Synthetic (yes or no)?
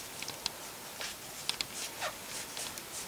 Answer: no